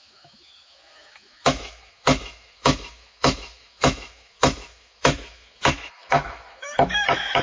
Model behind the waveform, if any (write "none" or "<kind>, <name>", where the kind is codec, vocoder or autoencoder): autoencoder, DAC-VAE